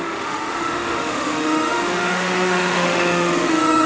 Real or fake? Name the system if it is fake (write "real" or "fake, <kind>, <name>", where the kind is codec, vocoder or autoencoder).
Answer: fake, autoencoder, DAC-VAE